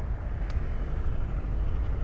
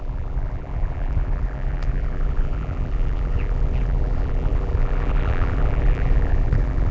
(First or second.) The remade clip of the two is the second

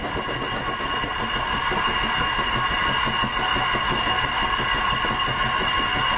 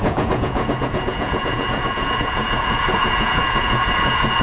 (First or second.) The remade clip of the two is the second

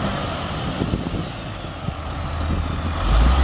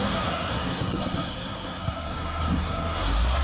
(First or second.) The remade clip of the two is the second